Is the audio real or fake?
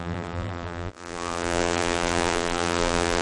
fake